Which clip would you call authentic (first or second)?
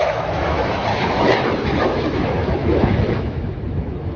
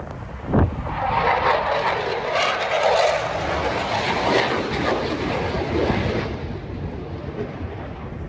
second